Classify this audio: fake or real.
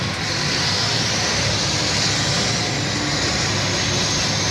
real